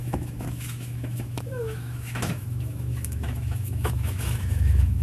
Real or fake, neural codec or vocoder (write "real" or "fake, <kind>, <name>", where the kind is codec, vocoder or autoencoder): fake, autoencoder, DAC-VAE